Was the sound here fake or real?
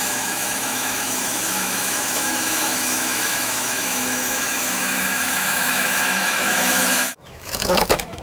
fake